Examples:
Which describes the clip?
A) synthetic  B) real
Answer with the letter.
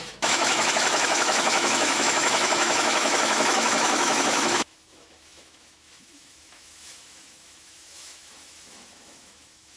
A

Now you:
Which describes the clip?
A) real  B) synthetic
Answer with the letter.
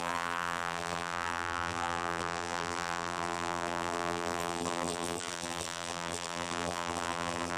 B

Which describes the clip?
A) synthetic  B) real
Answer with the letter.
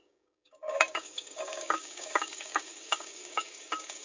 A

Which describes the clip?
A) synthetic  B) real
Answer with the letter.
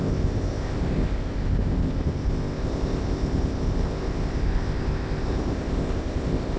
A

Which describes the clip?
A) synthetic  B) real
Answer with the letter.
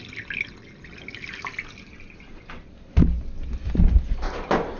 B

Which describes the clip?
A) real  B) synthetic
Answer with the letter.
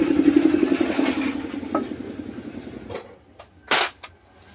A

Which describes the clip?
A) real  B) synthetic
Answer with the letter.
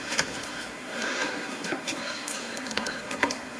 B